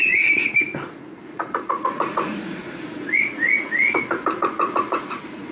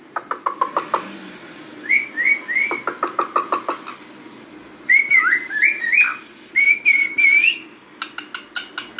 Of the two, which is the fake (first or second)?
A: first